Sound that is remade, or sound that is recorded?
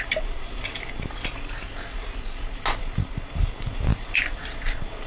recorded